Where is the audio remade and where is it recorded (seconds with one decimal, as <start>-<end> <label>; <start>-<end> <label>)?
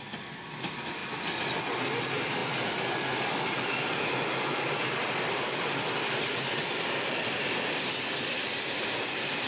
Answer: 0.0-9.5 recorded